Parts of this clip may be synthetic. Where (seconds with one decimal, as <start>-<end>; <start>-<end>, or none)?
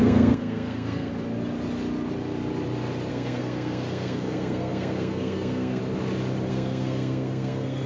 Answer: 0.0-1.1; 3.1-5.8; 6.5-7.9